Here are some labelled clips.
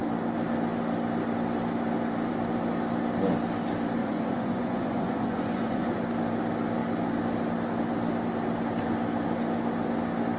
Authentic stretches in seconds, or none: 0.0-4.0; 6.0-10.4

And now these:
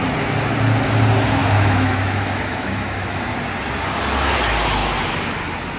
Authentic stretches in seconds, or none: 0.0-1.4; 3.3-5.8

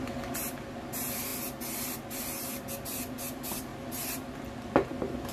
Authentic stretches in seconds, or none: 0.0-5.3

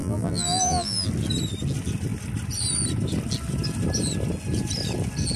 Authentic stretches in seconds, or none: 1.1-5.4

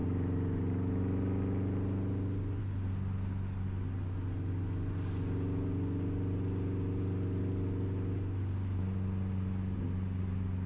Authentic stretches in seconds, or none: 0.0-10.7

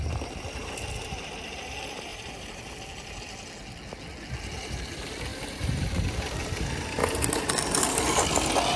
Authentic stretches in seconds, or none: 0.0-2.1; 2.7-5.3; 6.6-8.8